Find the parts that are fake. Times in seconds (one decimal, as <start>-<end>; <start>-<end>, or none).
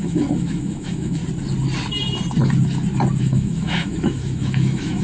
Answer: 0.0-1.2; 3.2-5.0